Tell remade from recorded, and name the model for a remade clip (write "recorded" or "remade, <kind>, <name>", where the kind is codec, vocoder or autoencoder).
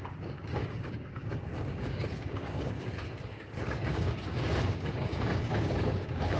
remade, codec, DAC